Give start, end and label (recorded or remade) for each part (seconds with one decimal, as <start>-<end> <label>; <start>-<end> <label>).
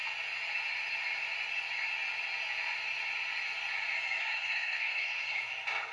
0.0-4.2 recorded; 4.2-5.5 remade; 5.5-5.9 recorded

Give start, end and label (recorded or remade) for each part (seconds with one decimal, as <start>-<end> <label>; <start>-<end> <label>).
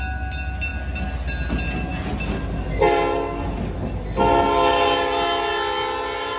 0.0-6.4 recorded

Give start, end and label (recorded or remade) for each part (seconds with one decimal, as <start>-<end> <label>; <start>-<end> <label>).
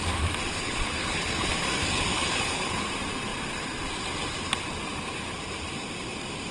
0.0-0.5 recorded; 0.5-1.5 remade; 1.5-2.1 recorded; 2.1-2.9 remade; 2.9-6.5 recorded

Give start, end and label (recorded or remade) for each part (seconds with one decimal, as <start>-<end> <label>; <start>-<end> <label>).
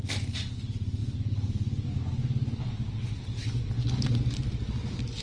0.0-5.2 recorded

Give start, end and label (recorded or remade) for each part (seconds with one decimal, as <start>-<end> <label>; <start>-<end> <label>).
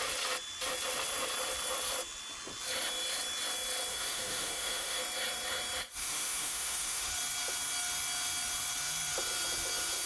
0.0-3.9 recorded; 3.9-5.0 remade; 5.0-6.0 recorded; 6.0-7.1 remade; 7.1-10.1 recorded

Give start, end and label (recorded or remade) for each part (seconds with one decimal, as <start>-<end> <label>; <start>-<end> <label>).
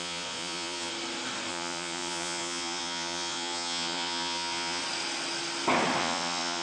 0.0-0.9 remade; 0.9-1.5 recorded; 1.5-4.8 remade; 4.8-6.0 recorded; 6.0-6.6 remade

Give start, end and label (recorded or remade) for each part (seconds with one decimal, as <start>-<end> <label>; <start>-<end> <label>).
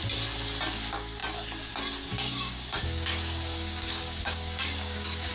0.0-2.1 recorded; 2.1-5.3 remade